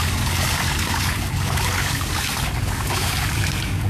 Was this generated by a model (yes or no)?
yes